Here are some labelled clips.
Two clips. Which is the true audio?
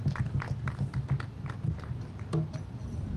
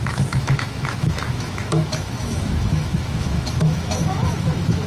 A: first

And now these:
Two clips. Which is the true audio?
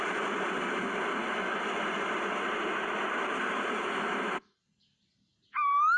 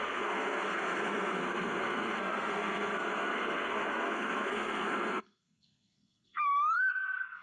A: first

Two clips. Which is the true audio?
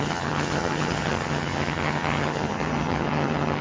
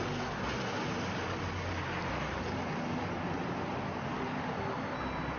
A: second